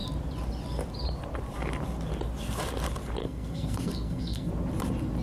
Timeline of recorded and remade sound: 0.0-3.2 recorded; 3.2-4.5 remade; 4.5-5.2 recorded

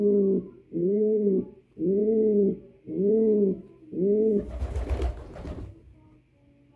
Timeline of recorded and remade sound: 0.0-0.8 recorded; 0.8-1.4 remade; 1.4-6.8 recorded